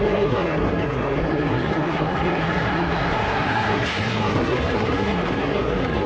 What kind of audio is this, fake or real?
fake